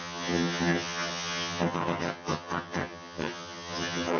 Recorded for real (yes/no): no